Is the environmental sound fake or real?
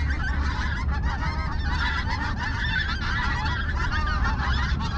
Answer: real